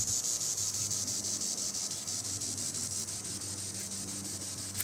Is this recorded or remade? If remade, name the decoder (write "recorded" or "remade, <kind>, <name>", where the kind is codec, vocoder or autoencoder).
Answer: recorded